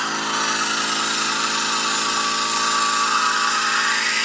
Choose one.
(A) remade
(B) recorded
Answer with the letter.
B